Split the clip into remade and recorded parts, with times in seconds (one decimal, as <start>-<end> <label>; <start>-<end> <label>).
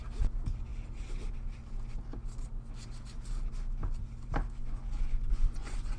0.0-4.6 recorded; 4.6-6.0 remade